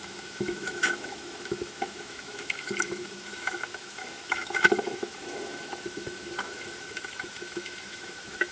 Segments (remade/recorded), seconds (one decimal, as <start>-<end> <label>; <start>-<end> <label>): 0.0-8.5 remade

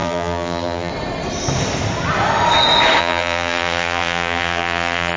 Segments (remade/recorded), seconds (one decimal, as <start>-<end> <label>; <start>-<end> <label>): 0.0-0.9 remade; 0.9-3.0 recorded; 3.0-5.2 remade

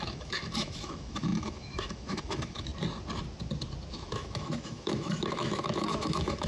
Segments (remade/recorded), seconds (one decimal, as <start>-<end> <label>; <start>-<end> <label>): 0.0-2.7 remade; 2.7-3.9 recorded; 3.9-6.5 remade

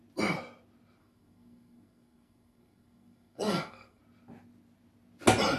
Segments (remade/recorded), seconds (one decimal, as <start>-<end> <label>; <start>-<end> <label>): 0.0-1.0 recorded; 1.0-4.0 remade; 4.0-5.6 recorded

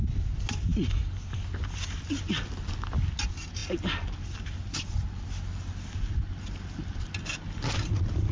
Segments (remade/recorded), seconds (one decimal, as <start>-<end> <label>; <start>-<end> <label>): 0.0-8.3 recorded

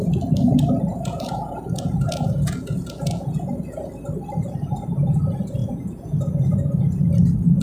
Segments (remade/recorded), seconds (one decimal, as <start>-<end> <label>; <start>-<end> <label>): 0.0-0.9 recorded; 0.9-3.9 remade; 3.9-5.6 recorded; 5.6-7.0 remade; 7.0-7.6 recorded